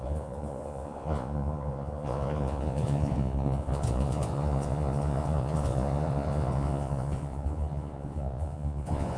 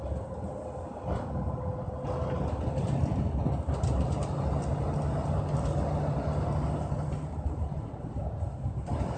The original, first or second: second